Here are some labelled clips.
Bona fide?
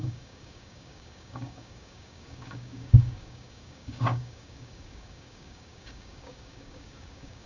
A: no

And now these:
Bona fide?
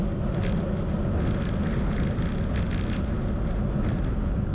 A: yes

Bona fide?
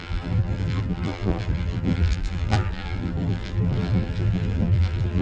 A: no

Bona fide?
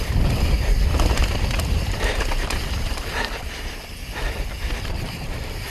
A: no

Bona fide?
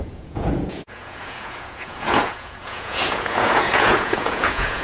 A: no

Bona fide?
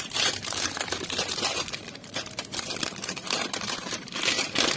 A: no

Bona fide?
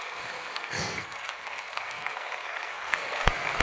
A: no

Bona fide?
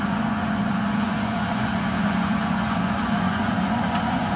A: no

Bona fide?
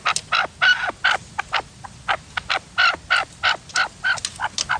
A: yes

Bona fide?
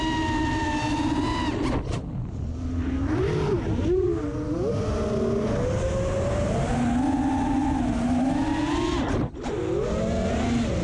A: yes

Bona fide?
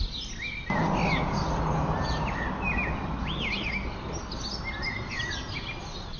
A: yes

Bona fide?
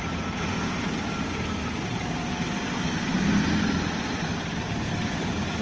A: no